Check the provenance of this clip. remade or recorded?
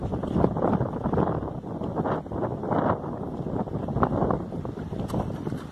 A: recorded